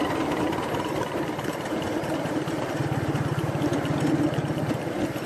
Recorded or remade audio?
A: remade